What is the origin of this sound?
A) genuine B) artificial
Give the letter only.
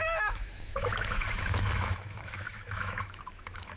B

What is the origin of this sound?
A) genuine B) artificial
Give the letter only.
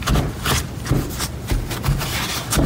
A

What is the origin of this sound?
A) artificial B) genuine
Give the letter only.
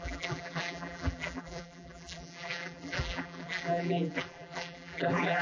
A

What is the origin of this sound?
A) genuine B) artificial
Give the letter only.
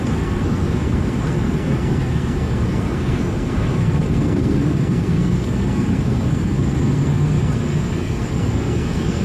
B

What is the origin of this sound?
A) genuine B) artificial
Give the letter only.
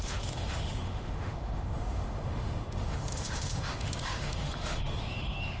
B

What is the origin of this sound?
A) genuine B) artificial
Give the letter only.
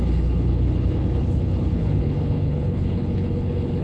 B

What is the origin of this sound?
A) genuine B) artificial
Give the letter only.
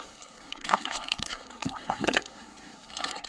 B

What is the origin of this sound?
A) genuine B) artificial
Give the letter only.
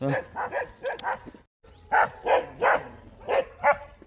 A